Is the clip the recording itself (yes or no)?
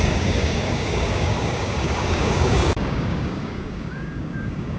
no